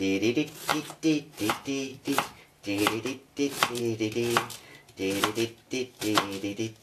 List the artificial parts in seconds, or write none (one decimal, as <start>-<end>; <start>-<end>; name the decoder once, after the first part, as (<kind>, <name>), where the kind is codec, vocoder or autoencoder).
0.7-1.5 (vocoder, BigVGAN v2); 1.9-3.8